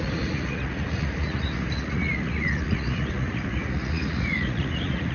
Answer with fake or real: fake